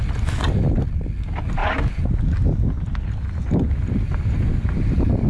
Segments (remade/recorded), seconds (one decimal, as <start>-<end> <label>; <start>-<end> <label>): 0.0-5.3 recorded